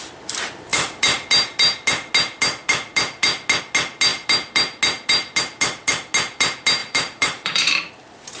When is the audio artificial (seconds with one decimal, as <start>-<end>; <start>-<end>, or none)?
6.8-7.7